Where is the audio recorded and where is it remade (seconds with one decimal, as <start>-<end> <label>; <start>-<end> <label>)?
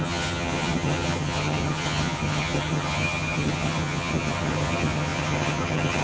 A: 0.0-6.0 remade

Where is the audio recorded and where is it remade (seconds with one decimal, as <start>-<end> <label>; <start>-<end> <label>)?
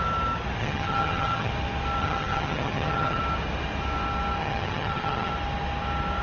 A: 0.0-0.6 recorded; 0.6-1.5 remade; 1.5-2.0 recorded; 2.0-3.2 remade; 3.2-4.4 recorded; 4.4-5.3 remade; 5.3-6.2 recorded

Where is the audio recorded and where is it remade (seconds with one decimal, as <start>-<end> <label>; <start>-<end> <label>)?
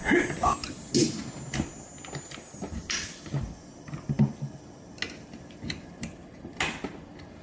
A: 0.0-7.4 recorded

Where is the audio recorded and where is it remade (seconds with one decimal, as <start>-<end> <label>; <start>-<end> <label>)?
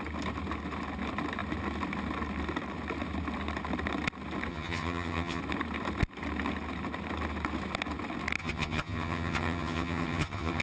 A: 0.0-4.5 recorded; 4.5-5.4 remade; 5.4-8.4 recorded; 8.4-10.6 remade